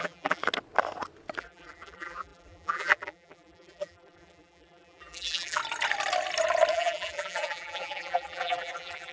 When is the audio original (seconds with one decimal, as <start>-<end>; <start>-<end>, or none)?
0.4-1.4; 5.6-6.7